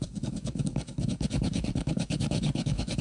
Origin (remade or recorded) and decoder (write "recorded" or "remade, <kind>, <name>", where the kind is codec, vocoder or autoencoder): remade, codec, DAC